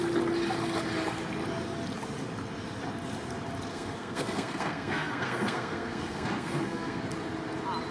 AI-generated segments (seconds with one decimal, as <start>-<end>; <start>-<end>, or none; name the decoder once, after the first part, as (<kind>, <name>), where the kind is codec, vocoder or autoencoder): 3.7-7.0 (codec, SNAC)

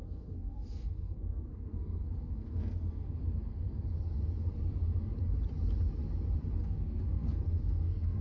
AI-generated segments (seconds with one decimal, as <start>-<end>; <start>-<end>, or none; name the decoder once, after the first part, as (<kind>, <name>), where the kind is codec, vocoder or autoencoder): 0.0-3.8 (codec, SNAC); 6.6-8.2